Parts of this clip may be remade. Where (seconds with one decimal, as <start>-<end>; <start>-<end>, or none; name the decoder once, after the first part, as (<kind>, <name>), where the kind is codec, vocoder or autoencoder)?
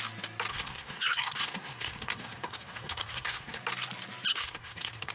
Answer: 0.5-3.6 (codec, SNAC); 4.3-5.1